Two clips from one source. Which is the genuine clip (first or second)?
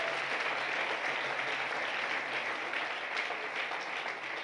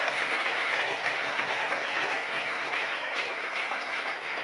first